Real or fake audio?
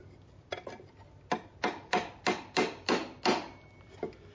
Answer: real